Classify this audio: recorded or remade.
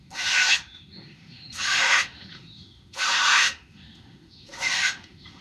remade